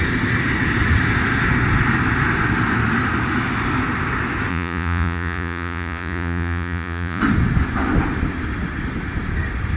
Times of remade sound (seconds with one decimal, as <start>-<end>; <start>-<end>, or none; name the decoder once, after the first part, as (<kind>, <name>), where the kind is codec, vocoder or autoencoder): 4.5-7.2 (vocoder, Vocos)